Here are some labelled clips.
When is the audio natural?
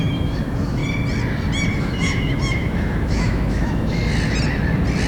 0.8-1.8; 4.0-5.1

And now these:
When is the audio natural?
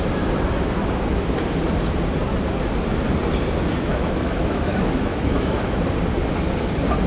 0.0-3.9; 5.8-7.1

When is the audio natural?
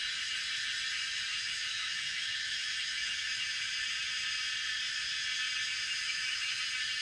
0.0-1.3; 3.7-5.8; 6.6-7.0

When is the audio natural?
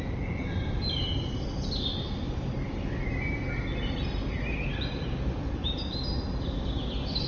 0.0-7.3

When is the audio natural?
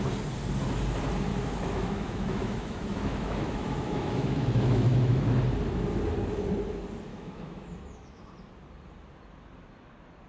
0.0-1.3; 5.4-7.1; 8.3-10.3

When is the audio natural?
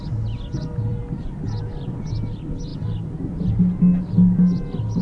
0.0-5.0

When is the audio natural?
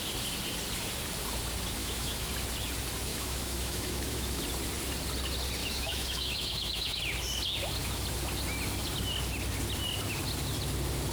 0.0-1.8; 2.3-3.1; 4.4-5.6; 7.0-11.1